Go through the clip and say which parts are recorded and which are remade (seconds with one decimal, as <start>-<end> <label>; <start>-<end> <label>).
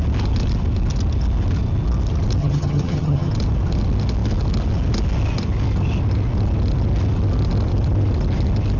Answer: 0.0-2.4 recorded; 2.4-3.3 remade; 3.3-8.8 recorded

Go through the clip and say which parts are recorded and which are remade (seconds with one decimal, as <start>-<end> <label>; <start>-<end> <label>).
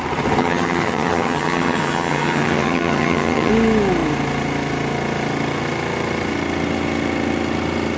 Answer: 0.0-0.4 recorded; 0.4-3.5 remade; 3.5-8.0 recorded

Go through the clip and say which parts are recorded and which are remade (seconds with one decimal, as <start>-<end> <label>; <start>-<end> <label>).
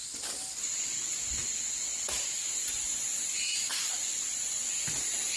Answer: 0.0-2.9 recorded; 2.9-4.7 remade; 4.7-5.4 recorded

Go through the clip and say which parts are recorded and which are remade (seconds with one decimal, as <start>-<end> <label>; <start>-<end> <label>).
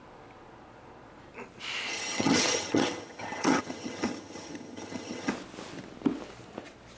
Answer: 0.0-1.9 recorded; 1.9-5.3 remade; 5.3-7.0 recorded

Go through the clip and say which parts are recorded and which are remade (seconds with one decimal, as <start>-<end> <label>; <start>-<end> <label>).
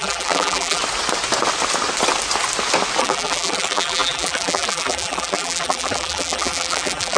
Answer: 0.0-0.8 remade; 0.8-3.0 recorded; 3.0-7.2 remade